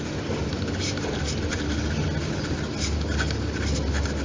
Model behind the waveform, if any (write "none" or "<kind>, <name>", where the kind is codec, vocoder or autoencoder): none